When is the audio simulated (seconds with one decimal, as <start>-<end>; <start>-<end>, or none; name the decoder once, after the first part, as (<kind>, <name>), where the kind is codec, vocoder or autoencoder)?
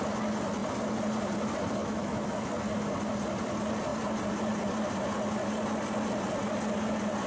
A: 1.8-2.5 (autoencoder, DAC-VAE)